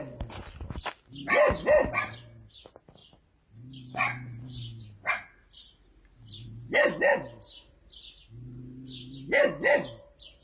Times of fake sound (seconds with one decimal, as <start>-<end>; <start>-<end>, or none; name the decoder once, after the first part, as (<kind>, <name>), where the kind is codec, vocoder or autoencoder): none